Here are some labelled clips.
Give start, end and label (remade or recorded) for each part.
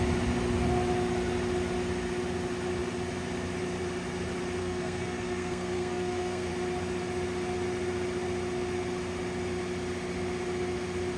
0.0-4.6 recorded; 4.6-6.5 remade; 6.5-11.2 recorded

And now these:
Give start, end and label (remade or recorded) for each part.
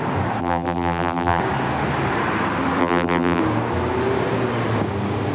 0.0-0.4 recorded; 0.4-1.4 remade; 1.4-2.8 recorded; 2.8-3.4 remade; 3.4-5.3 recorded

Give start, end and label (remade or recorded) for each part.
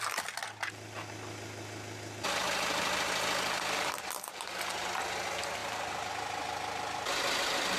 0.0-7.8 recorded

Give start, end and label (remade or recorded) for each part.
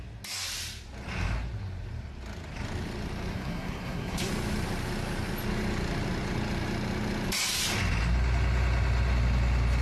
0.0-3.3 recorded; 3.3-4.3 remade; 4.3-9.8 recorded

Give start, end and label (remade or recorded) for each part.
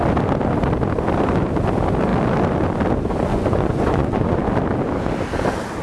0.0-3.3 recorded; 3.3-4.4 remade; 4.4-5.8 recorded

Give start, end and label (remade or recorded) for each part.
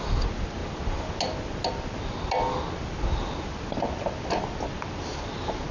0.0-5.7 recorded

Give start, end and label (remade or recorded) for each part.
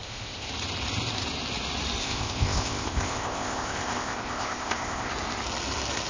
0.0-0.5 remade; 0.5-2.0 recorded; 2.0-5.1 remade; 5.1-6.1 recorded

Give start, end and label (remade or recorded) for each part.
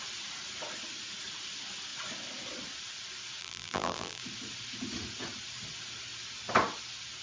0.0-3.4 recorded; 3.4-4.2 remade; 4.2-7.2 recorded